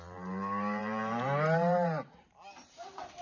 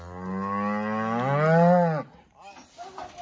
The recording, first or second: second